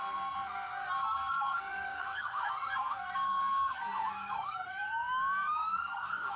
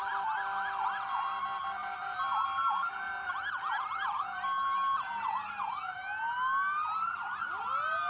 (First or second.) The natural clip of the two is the second